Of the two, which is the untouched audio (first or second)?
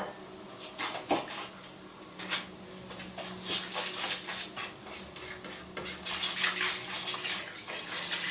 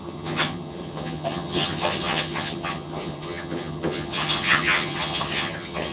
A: first